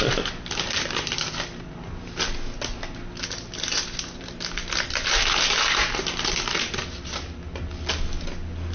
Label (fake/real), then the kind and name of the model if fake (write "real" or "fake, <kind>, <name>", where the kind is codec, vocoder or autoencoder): real